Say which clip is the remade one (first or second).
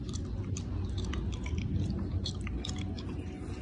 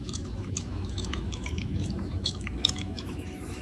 second